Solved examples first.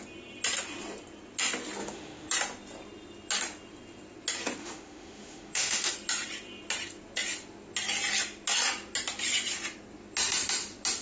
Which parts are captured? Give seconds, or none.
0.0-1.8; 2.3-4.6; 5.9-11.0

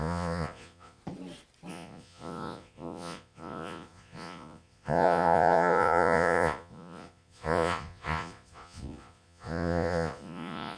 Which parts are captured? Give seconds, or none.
1.0-1.7

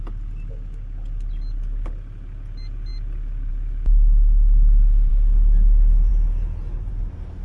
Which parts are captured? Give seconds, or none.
0.0-7.4